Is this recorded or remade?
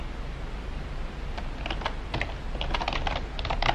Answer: recorded